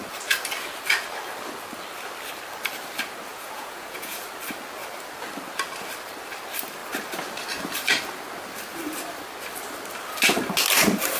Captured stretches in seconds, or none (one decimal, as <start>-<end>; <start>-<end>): 0.0-3.3; 4.2-11.2